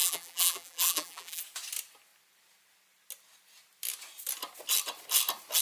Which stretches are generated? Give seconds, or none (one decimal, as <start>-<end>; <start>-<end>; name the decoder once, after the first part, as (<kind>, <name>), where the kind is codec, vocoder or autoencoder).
0.0-1.4 (vocoder, BigVGAN v2)